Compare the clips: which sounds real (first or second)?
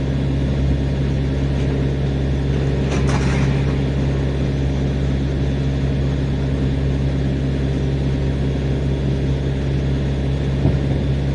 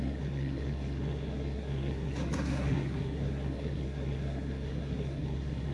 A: first